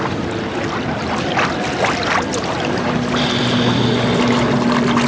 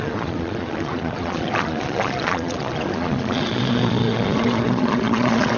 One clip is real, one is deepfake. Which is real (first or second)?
first